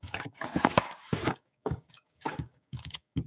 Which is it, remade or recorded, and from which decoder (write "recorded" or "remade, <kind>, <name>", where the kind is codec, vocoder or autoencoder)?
remade, codec, DAC